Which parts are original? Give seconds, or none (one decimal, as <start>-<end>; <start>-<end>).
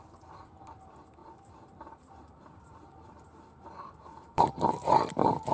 0.0-1.2; 4.5-5.5